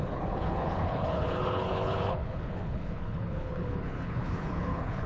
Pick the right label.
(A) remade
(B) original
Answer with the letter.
A